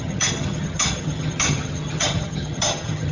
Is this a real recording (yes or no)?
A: no